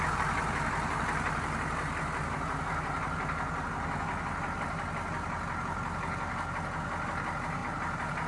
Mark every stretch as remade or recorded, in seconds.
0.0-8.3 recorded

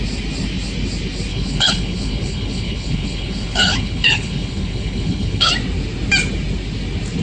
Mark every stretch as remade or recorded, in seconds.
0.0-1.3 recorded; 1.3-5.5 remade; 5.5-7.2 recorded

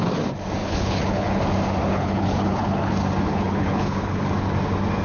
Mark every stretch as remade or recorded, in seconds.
0.0-0.6 recorded; 0.6-1.4 remade; 1.4-1.8 recorded; 1.8-2.9 remade; 2.9-3.3 recorded; 3.3-4.2 remade; 4.2-5.0 recorded

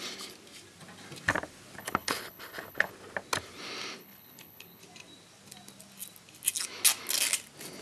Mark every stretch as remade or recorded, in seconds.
0.0-1.8 recorded; 1.8-2.9 remade; 2.9-4.0 recorded; 4.0-4.8 remade; 4.8-7.8 recorded

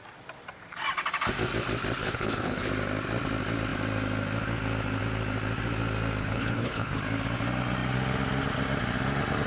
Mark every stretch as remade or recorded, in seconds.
0.0-2.0 recorded; 2.0-2.7 remade; 2.7-6.2 recorded; 6.2-7.0 remade; 7.0-9.5 recorded